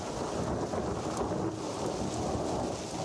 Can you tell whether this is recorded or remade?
recorded